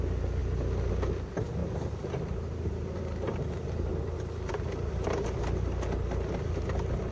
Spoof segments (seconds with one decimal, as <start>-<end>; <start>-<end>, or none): 1.6-5.4